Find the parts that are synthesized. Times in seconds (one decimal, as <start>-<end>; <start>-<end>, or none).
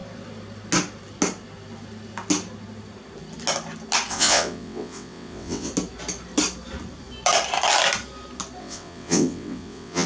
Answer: 4.1-5.7; 8.6-10.1